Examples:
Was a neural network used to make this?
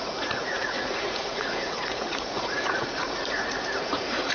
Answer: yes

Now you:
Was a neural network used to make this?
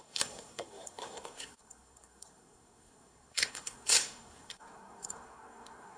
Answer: yes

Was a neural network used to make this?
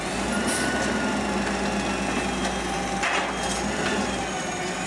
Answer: no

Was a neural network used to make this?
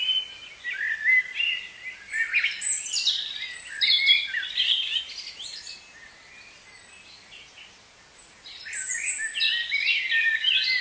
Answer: no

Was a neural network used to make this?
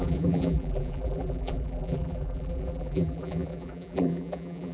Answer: yes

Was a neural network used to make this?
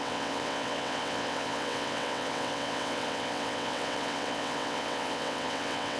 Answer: yes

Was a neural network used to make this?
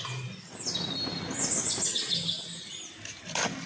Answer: no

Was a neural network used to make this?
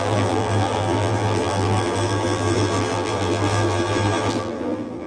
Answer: yes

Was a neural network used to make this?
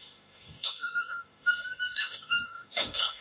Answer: yes